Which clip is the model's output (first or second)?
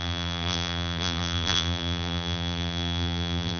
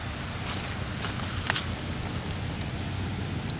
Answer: first